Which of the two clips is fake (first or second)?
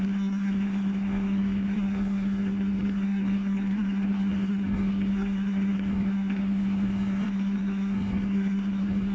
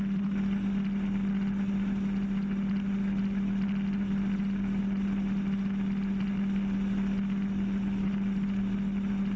first